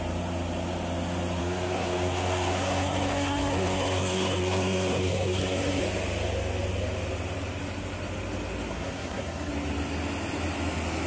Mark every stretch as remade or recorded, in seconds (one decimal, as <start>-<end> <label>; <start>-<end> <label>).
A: 0.0-1.4 recorded; 1.4-5.8 remade; 5.8-8.7 recorded; 8.7-9.5 remade; 9.5-11.1 recorded